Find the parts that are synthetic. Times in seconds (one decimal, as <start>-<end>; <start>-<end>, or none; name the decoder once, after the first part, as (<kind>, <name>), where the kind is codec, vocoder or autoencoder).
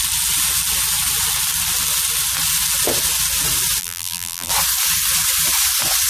3.8-4.5 (vocoder, BigVGAN v2)